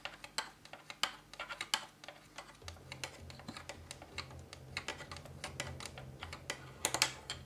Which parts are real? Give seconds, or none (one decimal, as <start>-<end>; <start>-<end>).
0.0-7.5